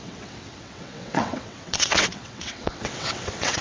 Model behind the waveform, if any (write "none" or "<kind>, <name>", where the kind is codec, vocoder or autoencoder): vocoder, WaveNeXt